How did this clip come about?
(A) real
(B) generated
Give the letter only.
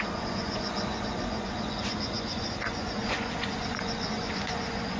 B